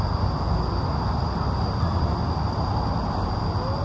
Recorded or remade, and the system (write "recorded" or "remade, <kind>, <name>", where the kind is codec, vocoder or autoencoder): recorded